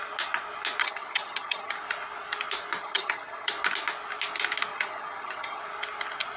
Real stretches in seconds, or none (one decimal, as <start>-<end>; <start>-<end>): 0.0-0.8; 1.7-2.8; 3.5-4.7; 5.6-6.4